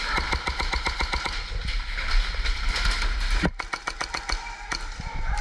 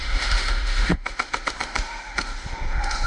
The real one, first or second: first